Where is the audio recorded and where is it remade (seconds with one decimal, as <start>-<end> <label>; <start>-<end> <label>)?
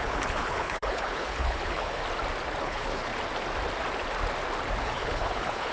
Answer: 0.0-2.0 remade; 2.0-2.6 recorded; 2.6-3.1 remade; 3.1-4.8 recorded; 4.8-5.7 remade